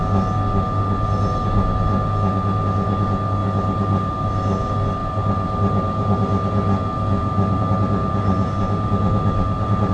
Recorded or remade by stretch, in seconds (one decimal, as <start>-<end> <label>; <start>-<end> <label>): 0.0-9.9 recorded